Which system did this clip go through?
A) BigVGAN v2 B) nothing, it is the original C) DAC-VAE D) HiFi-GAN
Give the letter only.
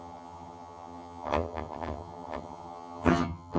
D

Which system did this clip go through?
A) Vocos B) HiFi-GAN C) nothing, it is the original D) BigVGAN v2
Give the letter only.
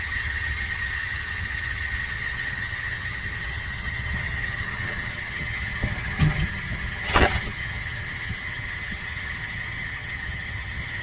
B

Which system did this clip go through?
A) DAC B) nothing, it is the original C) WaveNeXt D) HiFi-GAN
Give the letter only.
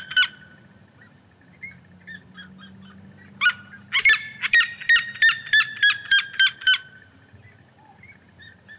B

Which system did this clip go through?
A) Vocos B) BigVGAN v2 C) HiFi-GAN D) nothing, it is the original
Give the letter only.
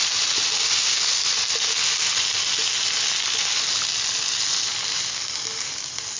D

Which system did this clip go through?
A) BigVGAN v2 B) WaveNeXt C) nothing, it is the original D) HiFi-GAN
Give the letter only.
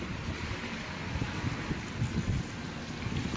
C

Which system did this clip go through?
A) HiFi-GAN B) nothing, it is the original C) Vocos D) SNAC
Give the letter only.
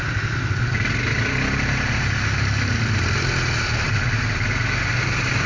B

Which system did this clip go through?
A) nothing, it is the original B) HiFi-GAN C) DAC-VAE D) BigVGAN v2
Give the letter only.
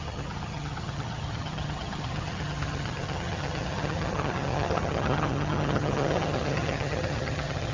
B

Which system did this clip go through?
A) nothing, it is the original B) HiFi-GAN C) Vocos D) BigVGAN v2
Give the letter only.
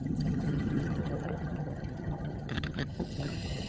B